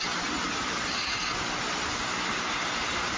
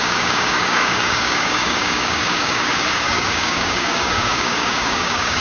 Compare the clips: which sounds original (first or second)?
first